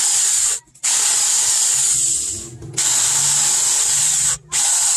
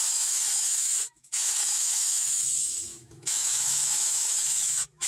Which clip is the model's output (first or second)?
second